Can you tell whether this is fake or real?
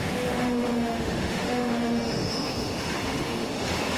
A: fake